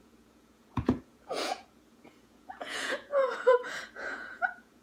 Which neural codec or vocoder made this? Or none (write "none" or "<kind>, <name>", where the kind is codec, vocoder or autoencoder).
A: vocoder, Vocos